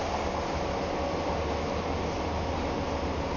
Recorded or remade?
recorded